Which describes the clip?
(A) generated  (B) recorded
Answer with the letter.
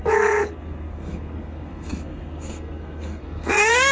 A